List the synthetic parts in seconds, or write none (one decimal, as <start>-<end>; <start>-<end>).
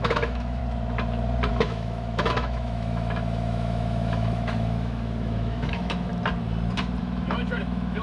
0.0-0.6; 1.5-6.1; 7.0-8.0